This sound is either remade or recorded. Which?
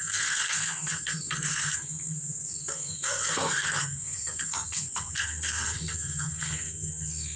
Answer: remade